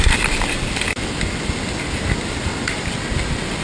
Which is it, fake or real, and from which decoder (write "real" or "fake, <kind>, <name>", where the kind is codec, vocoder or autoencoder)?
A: real